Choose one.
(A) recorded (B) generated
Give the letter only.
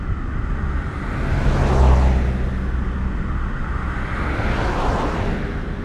A